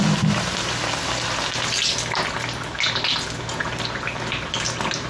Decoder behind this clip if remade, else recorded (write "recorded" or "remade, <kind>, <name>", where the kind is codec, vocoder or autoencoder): recorded